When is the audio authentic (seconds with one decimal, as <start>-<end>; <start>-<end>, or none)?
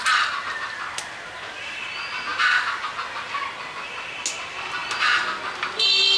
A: 0.0-6.2